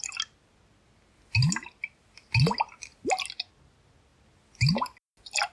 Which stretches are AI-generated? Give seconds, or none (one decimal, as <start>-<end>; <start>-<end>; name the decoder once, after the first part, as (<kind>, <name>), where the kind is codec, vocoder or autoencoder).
none

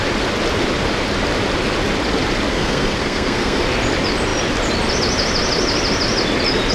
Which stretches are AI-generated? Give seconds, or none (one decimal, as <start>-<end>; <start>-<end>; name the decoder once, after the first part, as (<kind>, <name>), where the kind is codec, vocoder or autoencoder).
2.5-3.6 (codec, SNAC)

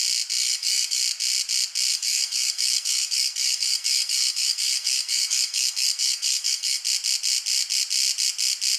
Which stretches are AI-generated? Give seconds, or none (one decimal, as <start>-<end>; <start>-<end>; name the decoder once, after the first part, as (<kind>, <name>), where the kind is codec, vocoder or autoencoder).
0.4-1.0 (codec, SNAC); 1.9-6.8

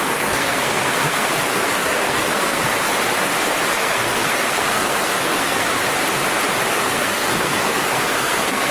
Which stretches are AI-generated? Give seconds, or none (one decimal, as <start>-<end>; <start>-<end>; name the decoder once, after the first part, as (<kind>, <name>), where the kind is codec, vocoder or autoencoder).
0.0-2.7 (codec, SNAC); 3.7-5.7; 6.7-8.7

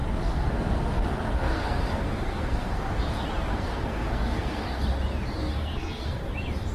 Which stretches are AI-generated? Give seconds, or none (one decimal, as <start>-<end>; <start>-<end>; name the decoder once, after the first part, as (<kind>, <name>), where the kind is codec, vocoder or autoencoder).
0.0-2.9 (codec, SNAC); 3.5-4.8; 5.4-6.2